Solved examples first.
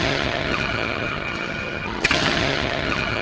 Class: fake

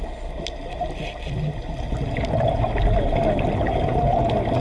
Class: real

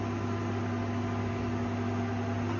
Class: real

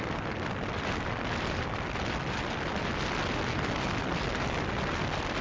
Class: real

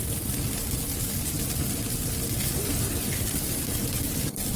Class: real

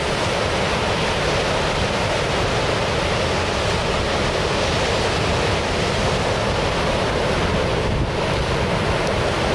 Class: real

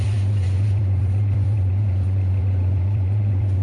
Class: fake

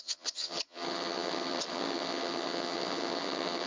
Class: fake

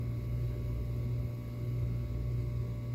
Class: real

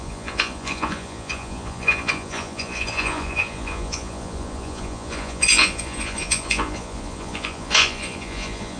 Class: fake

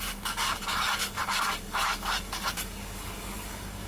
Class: fake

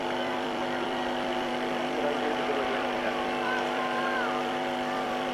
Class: fake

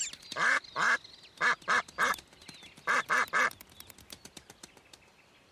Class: real